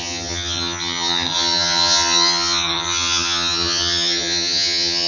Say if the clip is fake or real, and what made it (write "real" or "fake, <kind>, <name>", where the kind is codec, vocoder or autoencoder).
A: fake, vocoder, HiFi-GAN